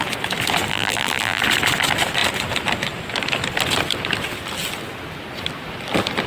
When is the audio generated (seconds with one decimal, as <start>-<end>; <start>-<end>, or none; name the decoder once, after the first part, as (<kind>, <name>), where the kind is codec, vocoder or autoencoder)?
0.7-1.4 (vocoder, BigVGAN v2)